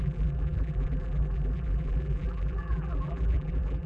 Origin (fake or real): fake